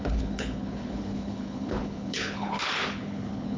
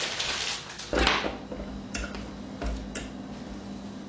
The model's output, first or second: first